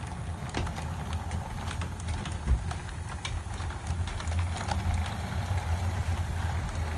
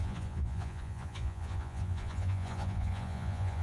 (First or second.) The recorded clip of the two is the first